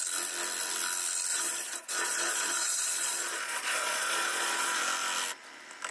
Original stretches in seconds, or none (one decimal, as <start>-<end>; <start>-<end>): 0.0-1.3; 4.8-5.9